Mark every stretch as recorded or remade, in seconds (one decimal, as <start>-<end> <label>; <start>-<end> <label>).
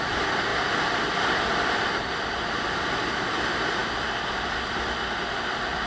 0.0-5.9 recorded